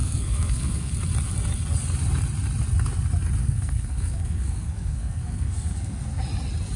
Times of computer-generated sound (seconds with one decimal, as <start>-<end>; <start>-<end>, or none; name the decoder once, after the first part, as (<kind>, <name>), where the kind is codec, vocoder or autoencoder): 0.0-0.9 (codec, SNAC); 3.4-6.2

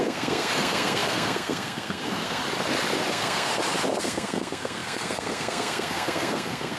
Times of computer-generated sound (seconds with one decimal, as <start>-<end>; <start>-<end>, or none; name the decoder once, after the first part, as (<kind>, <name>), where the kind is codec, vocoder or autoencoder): 0.0-2.4 (codec, SNAC); 3.1-3.5; 4.0-6.8

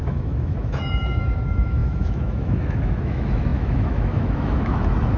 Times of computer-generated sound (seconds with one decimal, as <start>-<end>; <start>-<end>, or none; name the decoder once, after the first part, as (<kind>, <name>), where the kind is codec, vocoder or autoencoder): 0.0-5.2 (autoencoder, DAC-VAE)